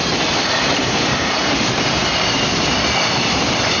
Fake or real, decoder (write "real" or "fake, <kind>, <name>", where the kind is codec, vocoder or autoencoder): fake, vocoder, BigVGAN v2